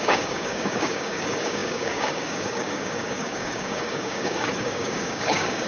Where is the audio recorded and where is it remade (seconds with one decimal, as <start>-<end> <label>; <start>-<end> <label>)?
0.0-5.7 remade